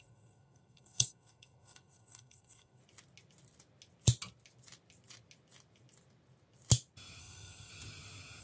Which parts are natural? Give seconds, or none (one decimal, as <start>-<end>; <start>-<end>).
2.8-7.2; 7.7-8.4